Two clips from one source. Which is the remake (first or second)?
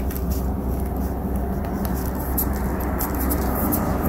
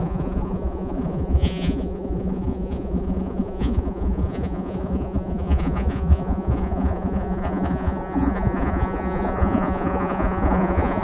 second